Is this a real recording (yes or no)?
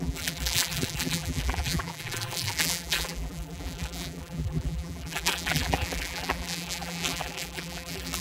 no